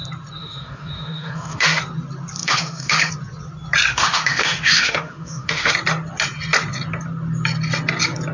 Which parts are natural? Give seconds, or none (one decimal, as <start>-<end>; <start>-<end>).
0.0-0.4; 1.8-2.4; 3.1-3.9; 5.7-8.3